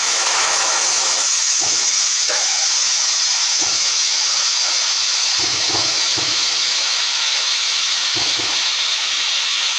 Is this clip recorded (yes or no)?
no